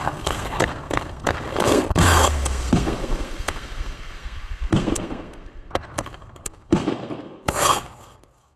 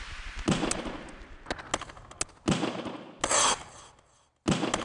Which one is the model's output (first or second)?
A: first